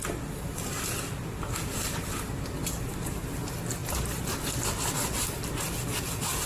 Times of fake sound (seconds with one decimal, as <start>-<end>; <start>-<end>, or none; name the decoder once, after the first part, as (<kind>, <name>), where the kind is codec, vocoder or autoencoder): none